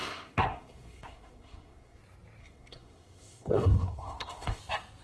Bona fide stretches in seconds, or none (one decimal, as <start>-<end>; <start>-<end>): 2.0-2.4; 4.6-5.0